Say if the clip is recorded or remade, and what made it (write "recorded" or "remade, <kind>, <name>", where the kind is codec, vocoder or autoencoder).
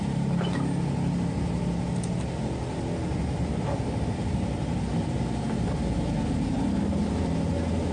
recorded